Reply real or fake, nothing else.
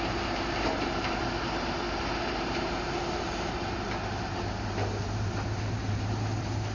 fake